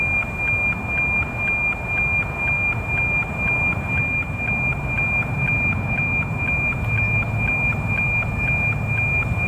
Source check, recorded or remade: recorded